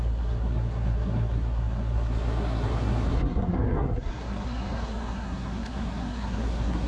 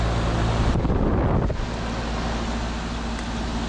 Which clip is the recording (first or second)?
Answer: second